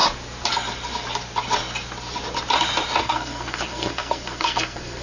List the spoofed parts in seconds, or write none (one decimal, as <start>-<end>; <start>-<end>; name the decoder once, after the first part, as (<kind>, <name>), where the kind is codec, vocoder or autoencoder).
3.0-5.0 (codec, SNAC)